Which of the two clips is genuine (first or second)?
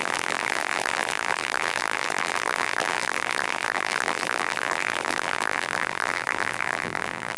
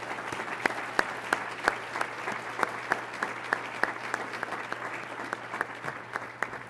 second